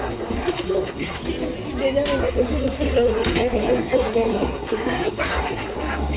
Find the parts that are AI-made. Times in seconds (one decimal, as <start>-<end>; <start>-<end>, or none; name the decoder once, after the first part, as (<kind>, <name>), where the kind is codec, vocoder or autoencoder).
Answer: 0.0-1.2 (codec, SNAC); 2.2-6.2